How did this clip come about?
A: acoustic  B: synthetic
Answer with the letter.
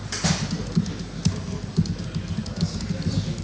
A